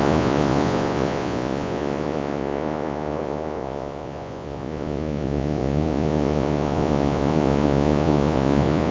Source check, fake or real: fake